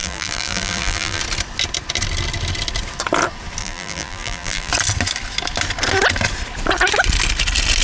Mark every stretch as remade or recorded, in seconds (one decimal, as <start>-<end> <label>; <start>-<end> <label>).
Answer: 0.0-1.2 remade; 1.2-3.6 recorded; 3.6-4.7 remade; 4.7-7.8 recorded